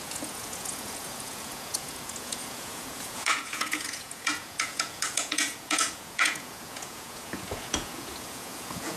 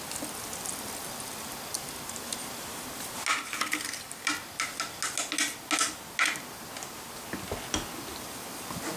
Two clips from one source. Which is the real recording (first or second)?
second